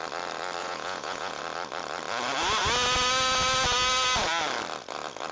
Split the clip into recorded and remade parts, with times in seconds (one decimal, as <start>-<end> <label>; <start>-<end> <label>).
0.0-0.6 recorded; 0.6-1.4 remade; 1.4-5.3 recorded